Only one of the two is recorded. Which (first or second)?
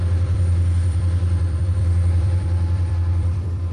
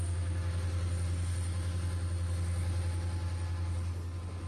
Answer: second